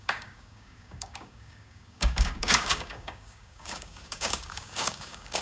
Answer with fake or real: fake